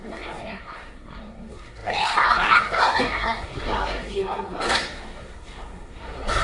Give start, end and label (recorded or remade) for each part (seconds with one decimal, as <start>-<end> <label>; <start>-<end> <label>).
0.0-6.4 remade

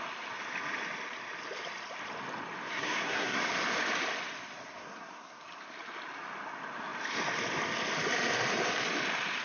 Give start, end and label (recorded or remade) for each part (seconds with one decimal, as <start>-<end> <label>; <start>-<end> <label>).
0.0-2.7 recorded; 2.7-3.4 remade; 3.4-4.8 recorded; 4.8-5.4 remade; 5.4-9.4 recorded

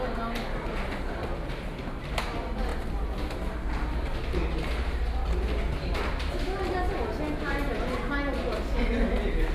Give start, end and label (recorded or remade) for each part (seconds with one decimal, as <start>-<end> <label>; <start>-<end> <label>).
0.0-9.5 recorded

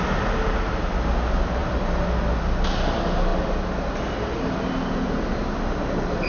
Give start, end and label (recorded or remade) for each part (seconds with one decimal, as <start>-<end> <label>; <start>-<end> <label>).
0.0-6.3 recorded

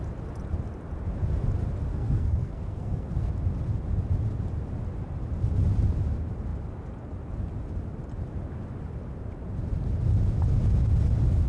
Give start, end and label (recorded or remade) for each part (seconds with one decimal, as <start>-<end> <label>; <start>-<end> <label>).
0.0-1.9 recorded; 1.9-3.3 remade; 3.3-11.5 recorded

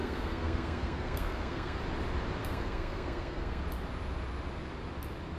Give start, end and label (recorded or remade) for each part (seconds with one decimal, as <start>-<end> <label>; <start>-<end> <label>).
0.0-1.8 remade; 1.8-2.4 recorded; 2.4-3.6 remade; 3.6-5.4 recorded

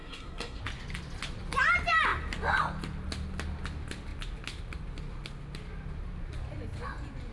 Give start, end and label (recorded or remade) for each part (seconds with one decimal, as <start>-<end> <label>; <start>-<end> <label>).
0.0-0.6 remade; 0.6-7.3 recorded